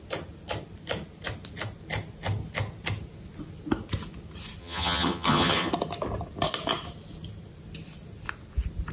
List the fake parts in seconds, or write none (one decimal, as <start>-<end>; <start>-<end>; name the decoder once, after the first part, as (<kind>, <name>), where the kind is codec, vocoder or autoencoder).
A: 4.6-5.7 (vocoder, HiFi-GAN)